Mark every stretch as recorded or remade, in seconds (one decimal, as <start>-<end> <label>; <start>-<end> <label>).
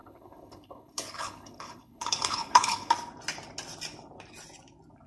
0.0-2.9 remade; 2.9-5.1 recorded